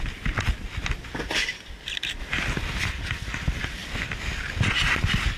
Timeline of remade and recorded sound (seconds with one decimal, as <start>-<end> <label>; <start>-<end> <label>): 0.0-5.4 recorded